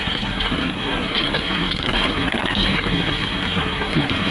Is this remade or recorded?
remade